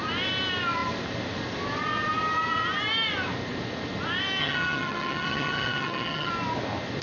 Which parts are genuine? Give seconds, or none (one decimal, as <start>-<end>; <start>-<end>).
0.0-4.4; 6.3-7.0